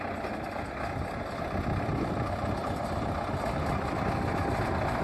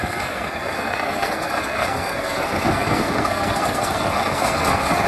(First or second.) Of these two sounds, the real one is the first